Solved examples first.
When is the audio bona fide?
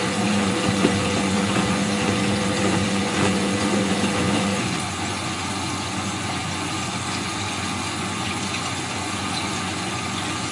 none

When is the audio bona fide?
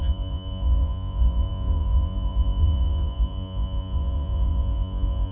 none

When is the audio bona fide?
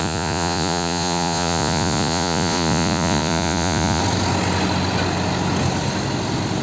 4.0-6.6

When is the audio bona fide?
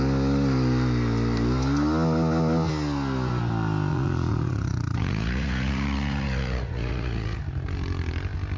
0.0-3.9; 7.4-8.6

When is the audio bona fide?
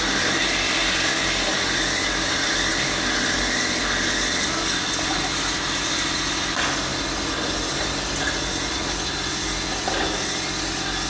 0.0-11.1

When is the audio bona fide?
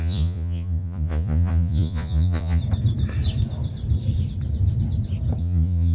2.6-5.4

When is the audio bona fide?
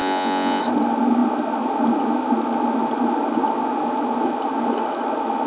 0.6-5.5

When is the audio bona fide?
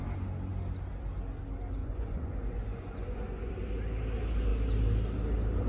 0.0-1.8; 3.5-5.7